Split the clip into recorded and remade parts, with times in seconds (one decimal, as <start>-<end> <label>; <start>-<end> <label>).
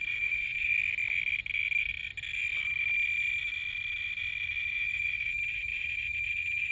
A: 0.0-0.7 remade; 0.7-4.7 recorded; 4.7-6.7 remade